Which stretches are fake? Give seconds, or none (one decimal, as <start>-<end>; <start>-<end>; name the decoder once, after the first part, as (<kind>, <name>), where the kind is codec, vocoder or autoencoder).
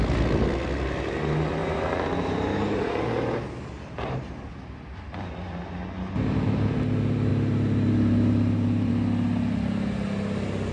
1.6-4.5 (vocoder, BigVGAN v2); 7.3-8.9